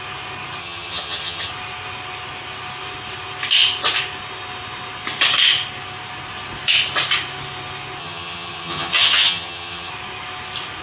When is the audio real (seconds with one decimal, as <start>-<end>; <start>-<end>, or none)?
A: 0.0-0.6; 1.5-8.0; 9.9-10.8